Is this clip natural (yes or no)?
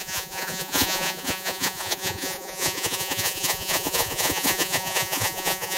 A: no